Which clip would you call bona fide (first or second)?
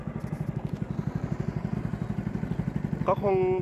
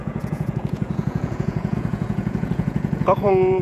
first